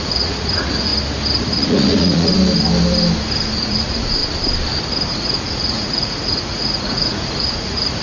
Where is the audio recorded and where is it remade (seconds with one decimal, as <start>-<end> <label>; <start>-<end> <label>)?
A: 0.0-0.9 remade; 0.9-1.4 recorded; 1.4-2.3 remade; 2.3-3.6 recorded; 3.6-4.2 remade; 4.2-5.1 recorded; 5.1-8.0 remade

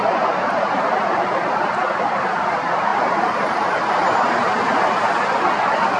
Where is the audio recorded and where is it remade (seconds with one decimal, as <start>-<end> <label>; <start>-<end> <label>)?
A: 0.0-6.0 recorded